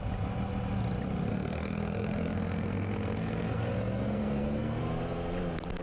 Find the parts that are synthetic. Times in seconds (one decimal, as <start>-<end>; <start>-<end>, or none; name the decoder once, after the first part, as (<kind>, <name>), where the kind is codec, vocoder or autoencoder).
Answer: 1.3-4.8 (codec, SNAC)